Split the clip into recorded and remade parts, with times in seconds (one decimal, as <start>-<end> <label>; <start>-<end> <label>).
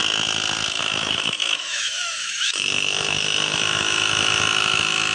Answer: 0.0-0.8 recorded; 0.8-5.1 remade